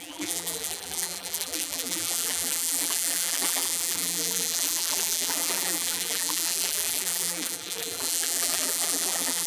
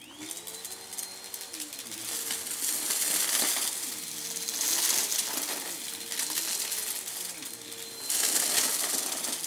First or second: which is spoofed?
first